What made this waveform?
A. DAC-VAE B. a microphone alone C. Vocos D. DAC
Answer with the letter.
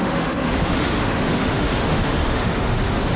A